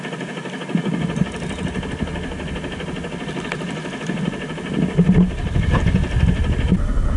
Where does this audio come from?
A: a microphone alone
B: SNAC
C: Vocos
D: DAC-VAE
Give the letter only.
A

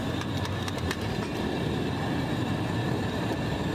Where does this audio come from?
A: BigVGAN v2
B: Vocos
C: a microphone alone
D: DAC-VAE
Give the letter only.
C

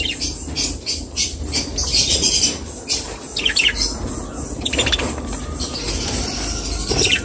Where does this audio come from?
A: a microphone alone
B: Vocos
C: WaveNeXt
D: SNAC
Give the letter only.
A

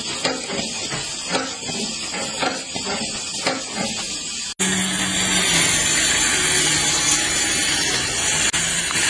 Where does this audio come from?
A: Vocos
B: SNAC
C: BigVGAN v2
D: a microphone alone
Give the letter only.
D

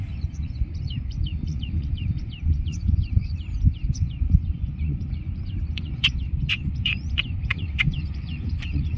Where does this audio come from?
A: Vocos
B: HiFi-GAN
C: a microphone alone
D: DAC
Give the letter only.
A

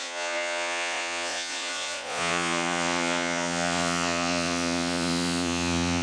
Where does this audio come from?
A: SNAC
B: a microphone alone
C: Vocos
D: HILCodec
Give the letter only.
C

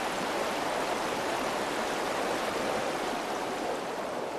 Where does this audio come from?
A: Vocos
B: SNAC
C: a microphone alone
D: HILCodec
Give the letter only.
C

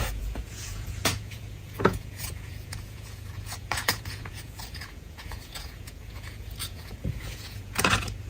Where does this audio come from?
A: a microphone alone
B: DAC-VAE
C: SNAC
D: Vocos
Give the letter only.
D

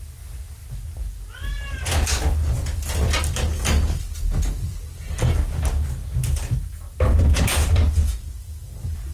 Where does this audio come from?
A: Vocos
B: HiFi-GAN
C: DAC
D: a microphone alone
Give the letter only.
D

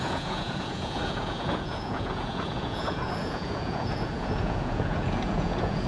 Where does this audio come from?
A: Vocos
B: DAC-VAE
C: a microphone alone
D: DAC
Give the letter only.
A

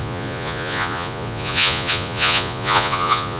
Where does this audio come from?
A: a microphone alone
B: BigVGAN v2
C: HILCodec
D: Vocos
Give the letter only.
D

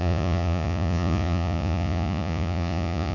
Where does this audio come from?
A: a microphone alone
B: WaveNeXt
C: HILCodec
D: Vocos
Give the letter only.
D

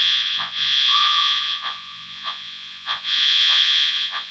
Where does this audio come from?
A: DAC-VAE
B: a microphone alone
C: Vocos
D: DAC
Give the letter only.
C